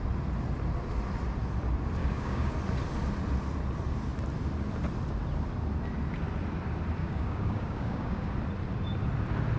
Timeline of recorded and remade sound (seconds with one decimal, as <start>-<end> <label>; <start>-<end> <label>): 0.0-2.0 recorded; 2.0-2.5 remade; 2.5-7.0 recorded; 7.0-8.3 remade; 8.3-9.6 recorded